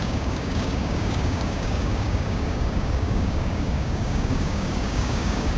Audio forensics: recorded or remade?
remade